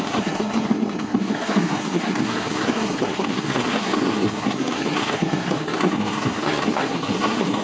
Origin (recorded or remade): remade